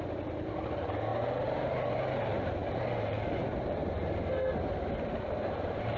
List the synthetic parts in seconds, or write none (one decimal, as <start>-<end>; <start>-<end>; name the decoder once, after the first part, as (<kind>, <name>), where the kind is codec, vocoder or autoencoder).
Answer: none